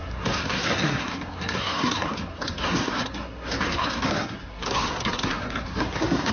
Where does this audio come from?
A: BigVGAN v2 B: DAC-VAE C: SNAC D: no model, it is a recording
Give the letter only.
C